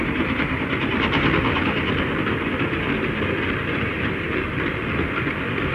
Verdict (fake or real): fake